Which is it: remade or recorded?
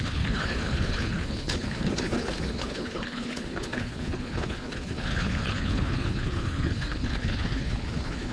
remade